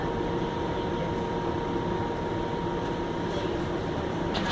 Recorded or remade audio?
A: recorded